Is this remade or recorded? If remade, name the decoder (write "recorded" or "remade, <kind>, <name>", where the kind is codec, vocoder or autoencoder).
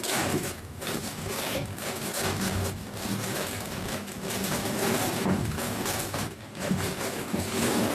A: remade, codec, DAC